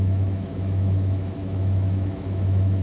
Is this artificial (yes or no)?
yes